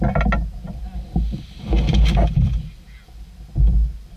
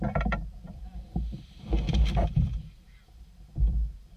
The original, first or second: first